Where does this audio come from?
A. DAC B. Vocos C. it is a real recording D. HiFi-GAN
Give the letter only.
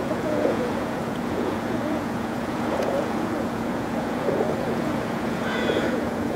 B